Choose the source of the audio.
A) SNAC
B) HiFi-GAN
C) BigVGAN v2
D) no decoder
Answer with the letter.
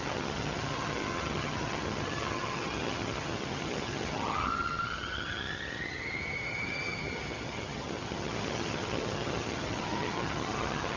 B